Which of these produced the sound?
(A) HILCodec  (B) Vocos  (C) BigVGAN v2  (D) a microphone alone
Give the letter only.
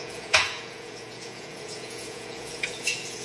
B